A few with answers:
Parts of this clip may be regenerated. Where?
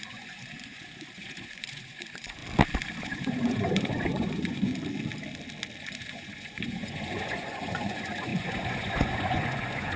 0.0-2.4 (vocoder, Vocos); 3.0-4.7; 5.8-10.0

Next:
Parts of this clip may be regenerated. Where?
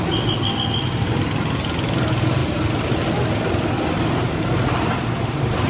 none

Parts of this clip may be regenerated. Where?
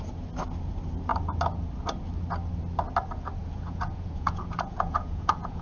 3.4-5.6 (vocoder, Vocos)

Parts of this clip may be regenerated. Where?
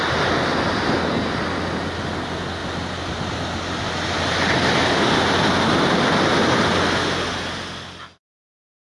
none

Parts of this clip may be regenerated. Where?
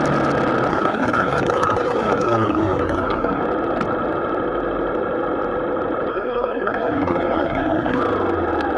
0.7-3.4 (codec, SNAC); 6.1-8.0